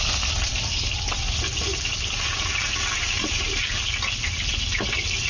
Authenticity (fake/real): real